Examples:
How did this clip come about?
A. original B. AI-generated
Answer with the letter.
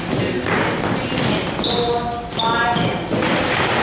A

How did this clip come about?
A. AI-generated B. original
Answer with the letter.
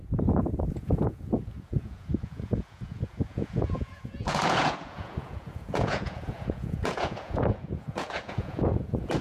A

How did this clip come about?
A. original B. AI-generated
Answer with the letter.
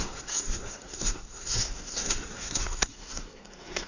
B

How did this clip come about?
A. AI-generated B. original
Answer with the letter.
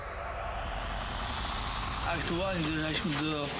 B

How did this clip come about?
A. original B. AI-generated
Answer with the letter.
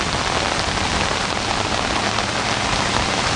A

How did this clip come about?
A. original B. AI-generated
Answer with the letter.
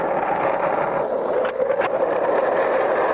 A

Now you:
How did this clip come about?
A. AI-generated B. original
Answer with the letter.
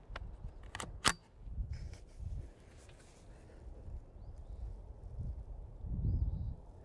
B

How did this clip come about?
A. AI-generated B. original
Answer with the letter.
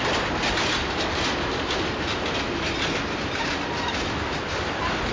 B